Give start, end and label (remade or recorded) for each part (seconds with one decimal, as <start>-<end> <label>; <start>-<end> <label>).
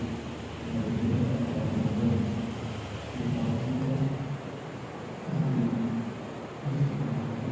0.0-7.5 recorded